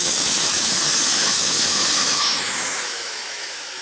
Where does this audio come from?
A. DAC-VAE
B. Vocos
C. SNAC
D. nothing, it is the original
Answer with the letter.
A